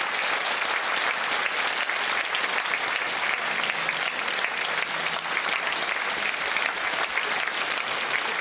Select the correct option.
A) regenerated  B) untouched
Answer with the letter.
B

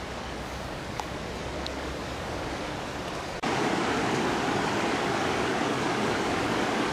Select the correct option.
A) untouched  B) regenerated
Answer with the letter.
B